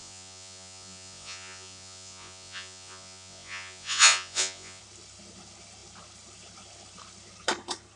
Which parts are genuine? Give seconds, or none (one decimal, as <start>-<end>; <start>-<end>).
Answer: 4.8-8.0